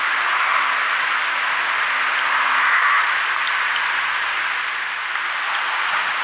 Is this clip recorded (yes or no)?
yes